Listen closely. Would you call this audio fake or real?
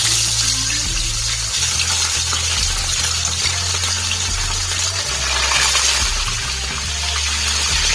real